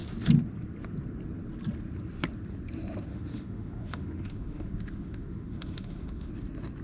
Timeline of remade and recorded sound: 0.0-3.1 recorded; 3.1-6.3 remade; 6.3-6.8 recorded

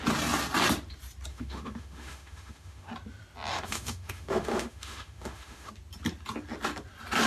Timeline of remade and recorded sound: 0.0-1.3 recorded; 1.3-2.9 remade; 2.9-3.5 recorded; 3.5-5.7 remade; 5.7-7.3 recorded